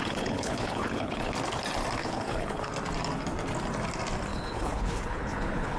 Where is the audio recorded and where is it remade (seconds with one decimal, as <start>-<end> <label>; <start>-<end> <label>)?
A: 0.0-1.3 remade; 1.3-2.0 recorded; 2.0-2.7 remade; 2.7-4.3 recorded; 4.3-5.8 remade